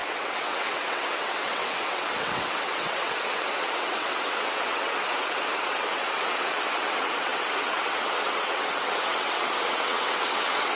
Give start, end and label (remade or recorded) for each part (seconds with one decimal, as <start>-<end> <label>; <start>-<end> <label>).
0.0-10.8 remade